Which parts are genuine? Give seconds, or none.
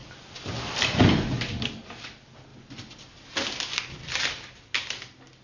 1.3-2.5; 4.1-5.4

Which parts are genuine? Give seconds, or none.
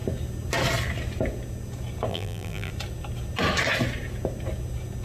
0.0-2.1; 2.7-5.0